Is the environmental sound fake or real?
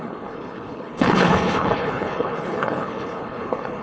fake